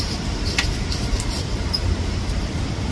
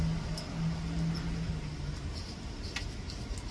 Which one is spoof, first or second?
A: first